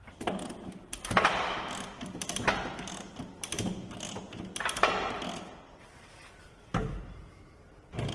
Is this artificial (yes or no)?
no